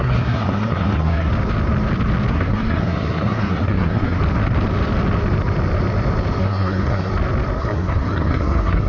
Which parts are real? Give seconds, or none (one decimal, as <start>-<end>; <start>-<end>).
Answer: 1.3-2.3; 4.2-6.4; 7.1-7.6